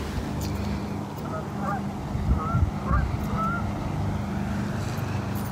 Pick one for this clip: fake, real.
real